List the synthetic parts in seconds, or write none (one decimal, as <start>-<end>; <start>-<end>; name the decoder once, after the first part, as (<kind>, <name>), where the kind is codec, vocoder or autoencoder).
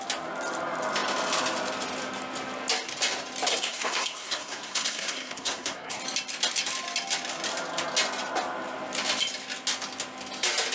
3.5-6.0 (codec, SNAC)